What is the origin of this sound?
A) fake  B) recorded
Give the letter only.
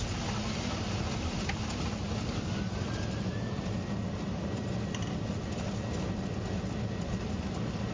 B